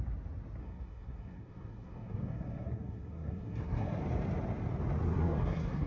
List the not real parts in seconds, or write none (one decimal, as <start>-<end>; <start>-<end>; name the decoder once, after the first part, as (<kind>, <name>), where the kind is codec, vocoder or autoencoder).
0.6-4.0 (codec, SNAC); 5.1-5.9